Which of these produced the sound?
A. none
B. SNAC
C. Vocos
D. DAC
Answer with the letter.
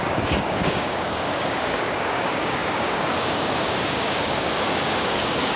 D